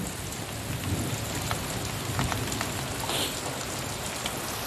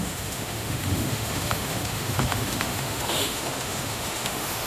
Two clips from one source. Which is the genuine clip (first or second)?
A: first